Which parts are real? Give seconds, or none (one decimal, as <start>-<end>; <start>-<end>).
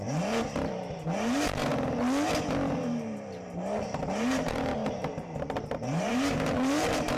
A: 1.7-2.8